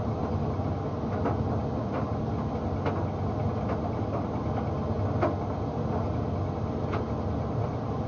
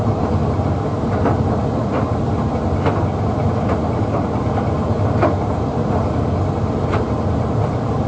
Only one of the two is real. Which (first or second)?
first